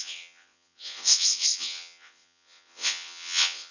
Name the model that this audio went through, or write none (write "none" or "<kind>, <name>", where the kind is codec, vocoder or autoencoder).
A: vocoder, WaveNeXt